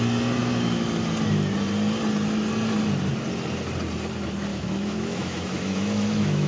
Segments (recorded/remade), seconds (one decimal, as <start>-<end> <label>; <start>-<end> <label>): 0.0-4.5 recorded; 4.5-6.5 remade